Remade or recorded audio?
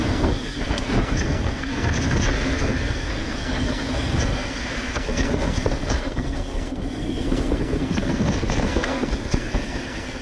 remade